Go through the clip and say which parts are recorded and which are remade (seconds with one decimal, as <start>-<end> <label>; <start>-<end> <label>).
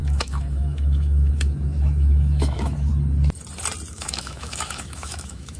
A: 0.0-2.9 remade; 2.9-3.9 recorded; 3.9-5.6 remade